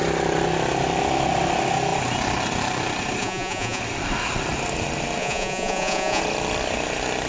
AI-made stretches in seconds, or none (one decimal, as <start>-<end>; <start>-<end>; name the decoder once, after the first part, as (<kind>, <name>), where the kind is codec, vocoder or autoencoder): 3.2-3.8 (vocoder, Vocos); 5.2-6.2